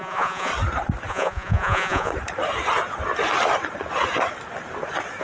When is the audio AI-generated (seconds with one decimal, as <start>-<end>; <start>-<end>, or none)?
0.0-0.5; 1.1-2.1